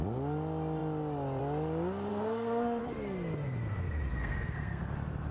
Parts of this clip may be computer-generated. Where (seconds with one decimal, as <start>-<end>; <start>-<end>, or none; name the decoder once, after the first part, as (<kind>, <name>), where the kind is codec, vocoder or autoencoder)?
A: 2.1-2.8 (codec, SNAC); 4.1-4.8